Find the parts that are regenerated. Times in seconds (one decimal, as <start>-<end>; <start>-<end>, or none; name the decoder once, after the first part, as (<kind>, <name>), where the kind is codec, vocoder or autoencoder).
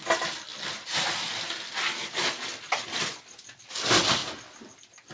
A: 0.5-3.6 (vocoder, BigVGAN v2)